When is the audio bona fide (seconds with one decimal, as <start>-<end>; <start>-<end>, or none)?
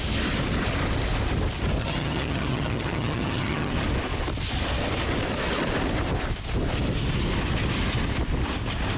0.0-1.8; 3.7-9.0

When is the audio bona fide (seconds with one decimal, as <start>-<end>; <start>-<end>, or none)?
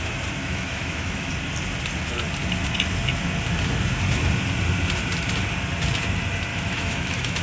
0.0-0.4; 1.3-6.5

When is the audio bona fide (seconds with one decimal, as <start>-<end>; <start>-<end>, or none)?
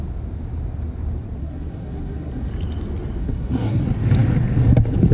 0.0-1.4; 2.5-3.2; 3.8-5.1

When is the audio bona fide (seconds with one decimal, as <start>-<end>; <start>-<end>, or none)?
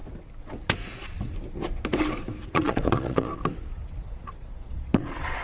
0.0-2.5; 3.4-4.1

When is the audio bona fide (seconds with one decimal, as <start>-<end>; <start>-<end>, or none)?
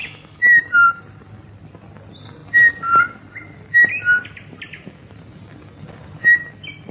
1.0-6.9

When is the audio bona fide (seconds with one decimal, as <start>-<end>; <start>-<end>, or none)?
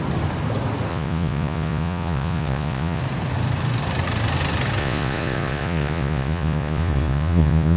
0.0-0.9; 3.0-4.8